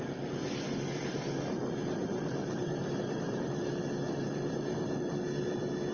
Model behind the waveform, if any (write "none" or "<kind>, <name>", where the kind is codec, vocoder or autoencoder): none